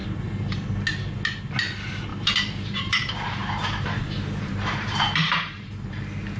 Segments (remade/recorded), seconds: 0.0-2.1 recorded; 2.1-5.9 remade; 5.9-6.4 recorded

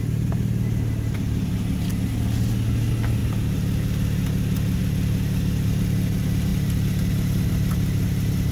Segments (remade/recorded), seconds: 0.0-8.5 recorded

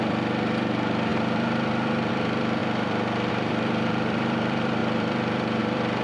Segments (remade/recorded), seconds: 0.0-6.0 remade

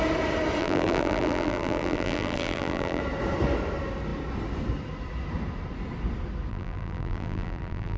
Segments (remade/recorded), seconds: 0.0-0.6 recorded; 0.6-3.0 remade; 3.0-6.5 recorded; 6.5-8.0 remade

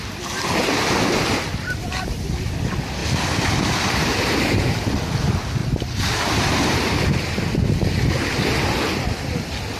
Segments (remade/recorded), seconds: 0.0-3.0 recorded; 3.0-4.5 remade; 4.5-5.6 recorded; 5.6-7.2 remade; 7.2-9.8 recorded

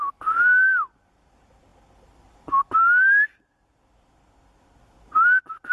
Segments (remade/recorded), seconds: 0.0-5.7 recorded